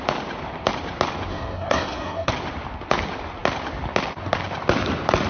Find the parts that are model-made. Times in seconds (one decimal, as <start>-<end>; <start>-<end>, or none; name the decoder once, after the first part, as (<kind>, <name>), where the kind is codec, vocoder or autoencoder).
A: 1.3-2.3 (codec, SNAC)